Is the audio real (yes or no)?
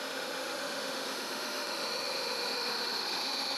no